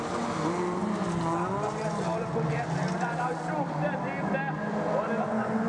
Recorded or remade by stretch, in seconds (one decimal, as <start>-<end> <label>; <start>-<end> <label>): 0.0-5.7 recorded